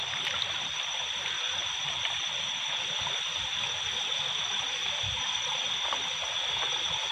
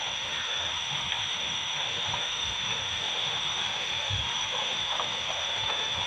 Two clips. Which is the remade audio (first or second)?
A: second